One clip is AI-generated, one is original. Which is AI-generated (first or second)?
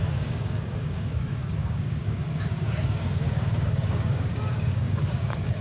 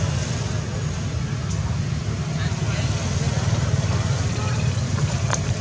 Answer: first